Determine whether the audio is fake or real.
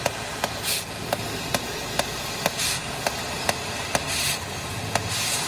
real